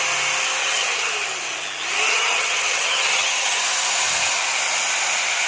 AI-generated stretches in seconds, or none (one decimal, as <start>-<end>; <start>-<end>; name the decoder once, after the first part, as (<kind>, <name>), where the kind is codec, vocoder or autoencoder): 0.6-1.1 (vocoder, HiFi-GAN); 2.1-3.6